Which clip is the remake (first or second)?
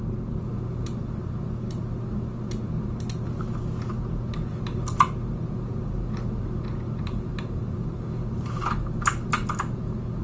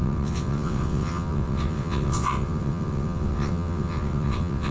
second